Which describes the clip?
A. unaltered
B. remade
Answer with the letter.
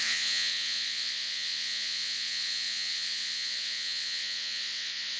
B